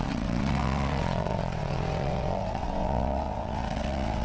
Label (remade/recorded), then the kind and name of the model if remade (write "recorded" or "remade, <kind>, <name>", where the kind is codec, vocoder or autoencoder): remade, vocoder, WaveNeXt